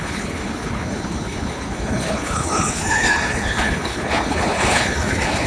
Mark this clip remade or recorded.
remade